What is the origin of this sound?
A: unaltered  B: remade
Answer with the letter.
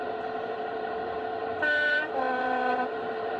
B